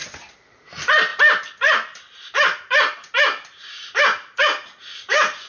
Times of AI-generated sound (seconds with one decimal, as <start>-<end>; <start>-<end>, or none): none